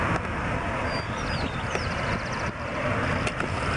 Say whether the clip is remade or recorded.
recorded